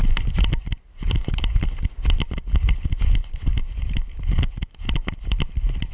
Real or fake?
real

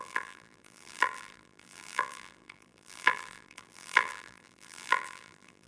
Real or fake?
fake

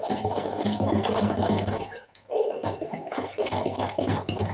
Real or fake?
fake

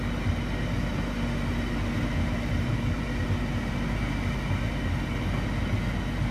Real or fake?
real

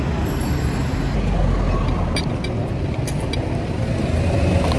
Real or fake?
real